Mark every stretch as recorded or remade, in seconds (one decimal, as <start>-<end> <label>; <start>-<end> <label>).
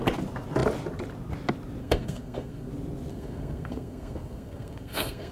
0.0-1.8 recorded; 1.8-2.7 remade; 2.7-3.1 recorded; 3.1-5.3 remade